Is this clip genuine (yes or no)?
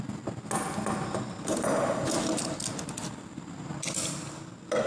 yes